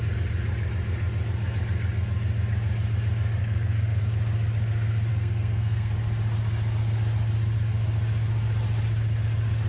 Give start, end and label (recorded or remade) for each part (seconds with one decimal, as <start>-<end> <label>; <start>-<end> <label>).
0.0-3.4 recorded; 3.4-4.0 remade; 4.0-5.1 recorded; 5.1-5.9 remade; 5.9-9.7 recorded